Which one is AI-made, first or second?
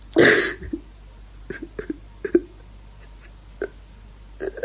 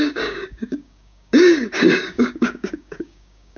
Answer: second